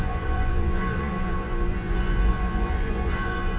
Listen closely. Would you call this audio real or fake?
fake